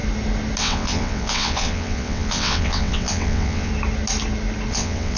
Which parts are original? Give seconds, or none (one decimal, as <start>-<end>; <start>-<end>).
0.0-0.6; 3.7-4.7